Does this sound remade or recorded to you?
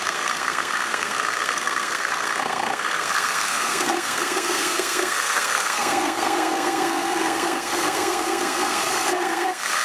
remade